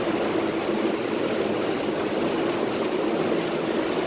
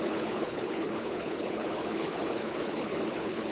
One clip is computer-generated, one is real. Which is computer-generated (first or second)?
second